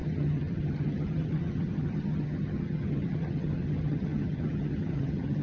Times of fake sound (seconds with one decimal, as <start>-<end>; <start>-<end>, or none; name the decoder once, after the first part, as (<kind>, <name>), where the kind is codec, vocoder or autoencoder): 0.0-5.4 (vocoder, HiFi-GAN)